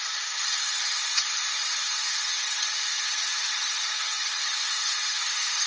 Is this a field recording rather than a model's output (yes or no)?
no